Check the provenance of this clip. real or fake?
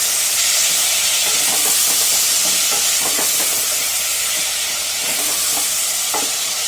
real